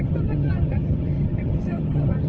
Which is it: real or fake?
fake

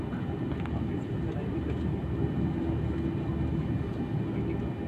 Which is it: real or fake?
real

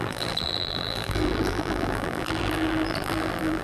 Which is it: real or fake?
fake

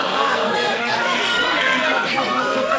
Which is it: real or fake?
fake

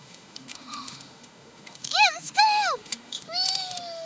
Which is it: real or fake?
fake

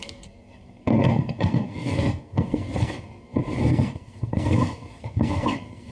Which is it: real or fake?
fake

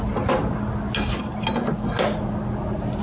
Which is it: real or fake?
real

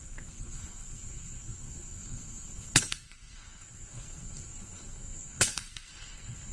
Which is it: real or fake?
fake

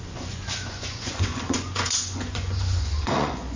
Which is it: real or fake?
fake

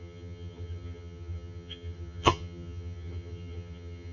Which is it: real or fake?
fake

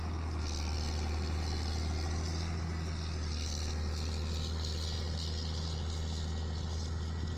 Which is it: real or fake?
real